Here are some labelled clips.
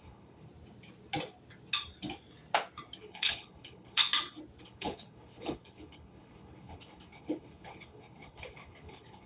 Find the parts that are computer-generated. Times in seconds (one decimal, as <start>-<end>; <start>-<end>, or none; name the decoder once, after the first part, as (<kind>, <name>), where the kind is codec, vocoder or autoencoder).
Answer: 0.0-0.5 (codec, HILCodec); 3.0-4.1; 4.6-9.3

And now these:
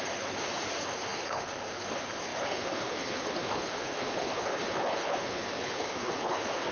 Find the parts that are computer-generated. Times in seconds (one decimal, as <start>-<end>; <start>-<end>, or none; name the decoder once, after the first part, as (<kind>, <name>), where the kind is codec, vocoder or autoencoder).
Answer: 0.0-6.7 (codec, HILCodec)

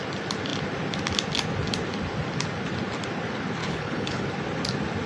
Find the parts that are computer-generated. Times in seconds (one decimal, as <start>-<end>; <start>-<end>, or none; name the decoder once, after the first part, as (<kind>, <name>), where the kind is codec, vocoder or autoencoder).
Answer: 3.6-4.2 (codec, HILCodec)